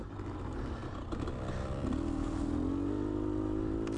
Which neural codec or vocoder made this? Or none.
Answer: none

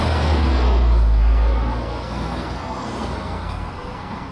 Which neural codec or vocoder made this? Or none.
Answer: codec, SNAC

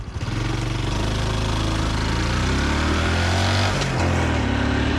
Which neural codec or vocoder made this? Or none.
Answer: none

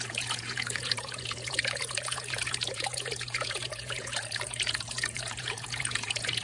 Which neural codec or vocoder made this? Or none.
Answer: vocoder, Vocos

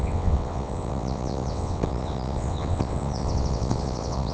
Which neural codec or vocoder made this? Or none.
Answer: vocoder, WaveNeXt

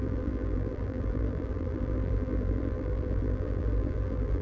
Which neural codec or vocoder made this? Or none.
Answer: vocoder, BigVGAN v2